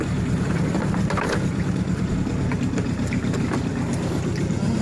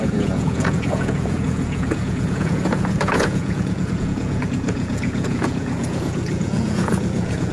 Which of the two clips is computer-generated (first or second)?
second